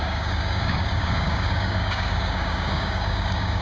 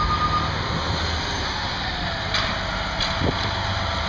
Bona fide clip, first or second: second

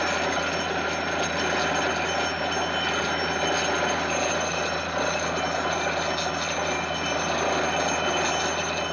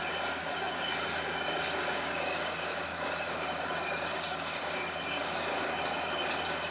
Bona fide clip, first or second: first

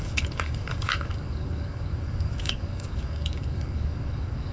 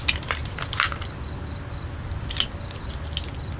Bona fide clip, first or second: second